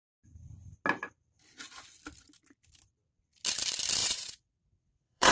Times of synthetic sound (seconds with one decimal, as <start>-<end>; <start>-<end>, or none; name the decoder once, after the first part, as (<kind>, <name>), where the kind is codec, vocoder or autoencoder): 4.0-5.3 (vocoder, WaveNeXt)